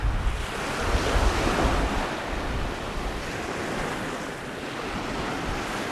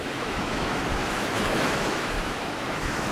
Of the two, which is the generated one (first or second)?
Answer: second